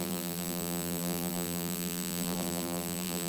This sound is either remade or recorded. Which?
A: remade